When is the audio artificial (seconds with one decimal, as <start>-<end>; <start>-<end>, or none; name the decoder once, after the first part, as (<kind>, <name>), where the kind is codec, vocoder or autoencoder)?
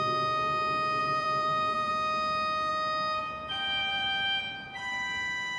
1.0-1.9 (vocoder, BigVGAN v2); 3.8-4.4